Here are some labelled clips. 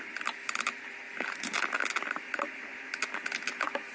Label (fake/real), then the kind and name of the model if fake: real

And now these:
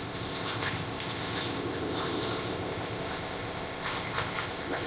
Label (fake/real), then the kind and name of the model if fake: fake, codec, ZipCodec